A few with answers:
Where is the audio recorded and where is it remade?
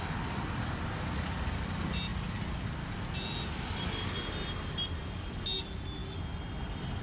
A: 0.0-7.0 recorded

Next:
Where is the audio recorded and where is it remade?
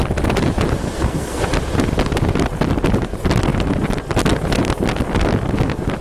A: 0.0-0.8 recorded; 0.8-1.4 remade; 1.4-6.0 recorded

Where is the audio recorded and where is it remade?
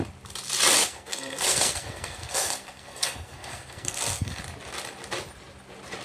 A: 0.0-0.8 recorded; 0.8-4.4 remade; 4.4-6.0 recorded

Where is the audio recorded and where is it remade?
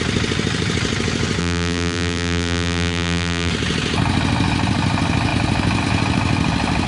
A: 0.0-1.4 recorded; 1.4-3.5 remade; 3.5-6.9 recorded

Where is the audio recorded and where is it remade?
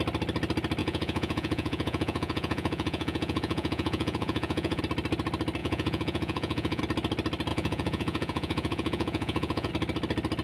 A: 0.0-0.8 recorded; 0.8-4.8 remade; 4.8-5.6 recorded; 5.6-6.8 remade; 6.8-7.5 recorded; 7.5-9.7 remade; 9.7-10.4 recorded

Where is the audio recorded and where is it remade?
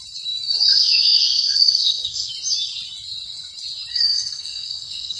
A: 0.0-0.7 recorded; 0.7-2.3 remade; 2.3-3.9 recorded; 3.9-5.2 remade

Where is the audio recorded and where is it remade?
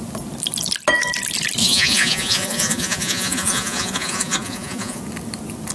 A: 0.0-1.6 recorded; 1.6-5.0 remade; 5.0-5.7 recorded